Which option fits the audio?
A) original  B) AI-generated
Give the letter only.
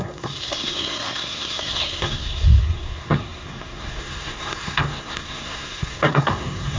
B